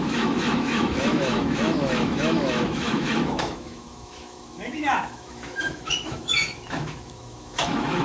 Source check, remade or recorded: remade